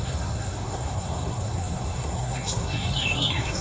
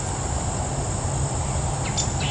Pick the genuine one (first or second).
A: second